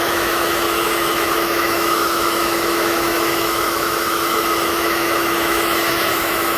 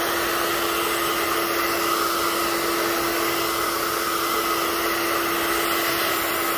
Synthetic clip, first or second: first